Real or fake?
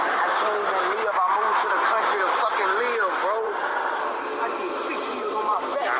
real